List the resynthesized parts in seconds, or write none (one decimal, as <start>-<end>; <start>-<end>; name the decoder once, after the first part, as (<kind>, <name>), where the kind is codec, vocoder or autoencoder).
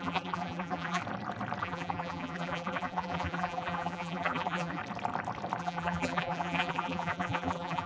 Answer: 0.0-1.0 (vocoder, BigVGAN v2); 1.6-4.8; 5.6-7.9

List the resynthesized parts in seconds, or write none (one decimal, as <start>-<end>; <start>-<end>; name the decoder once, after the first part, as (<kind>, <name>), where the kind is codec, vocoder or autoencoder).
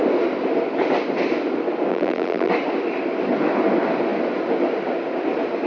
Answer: 1.9-2.5 (vocoder, BigVGAN v2)